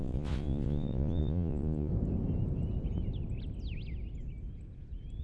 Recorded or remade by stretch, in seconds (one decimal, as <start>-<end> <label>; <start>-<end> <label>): 0.0-1.9 remade; 1.9-5.2 recorded